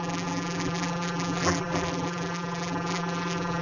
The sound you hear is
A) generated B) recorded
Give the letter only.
A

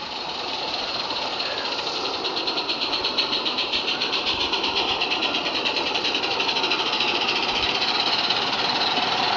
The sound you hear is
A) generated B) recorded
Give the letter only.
A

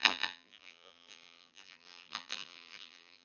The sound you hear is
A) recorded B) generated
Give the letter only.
B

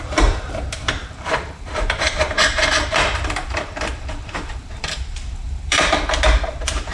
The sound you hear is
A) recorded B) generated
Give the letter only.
B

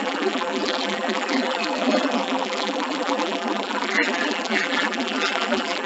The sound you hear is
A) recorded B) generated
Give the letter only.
B